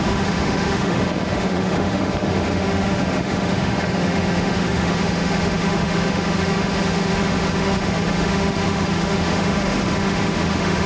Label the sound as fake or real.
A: fake